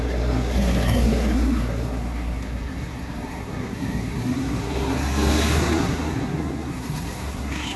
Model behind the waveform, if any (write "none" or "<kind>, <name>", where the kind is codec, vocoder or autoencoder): codec, SNAC